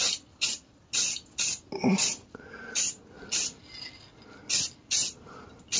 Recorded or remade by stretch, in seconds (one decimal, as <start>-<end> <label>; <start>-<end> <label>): 0.0-5.8 recorded